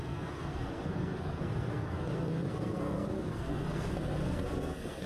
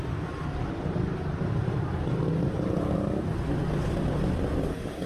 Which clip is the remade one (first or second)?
first